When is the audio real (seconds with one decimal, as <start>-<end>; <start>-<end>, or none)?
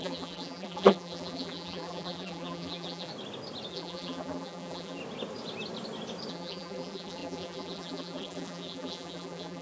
3.1-3.7; 5.0-6.3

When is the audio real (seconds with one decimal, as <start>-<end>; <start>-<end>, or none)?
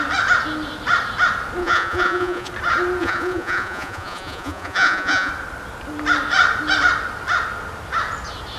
0.0-1.6; 2.5-3.0; 5.3-8.6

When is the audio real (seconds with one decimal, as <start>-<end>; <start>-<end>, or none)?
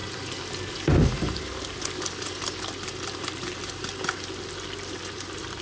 0.0-5.6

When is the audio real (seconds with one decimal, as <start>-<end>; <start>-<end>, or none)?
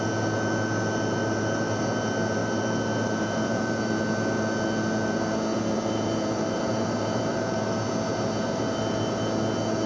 0.0-1.2; 1.8-2.4; 3.9-5.5; 7.8-9.9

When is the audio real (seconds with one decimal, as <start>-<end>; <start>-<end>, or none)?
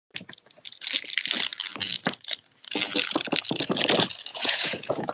0.0-4.3